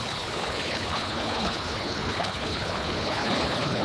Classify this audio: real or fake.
fake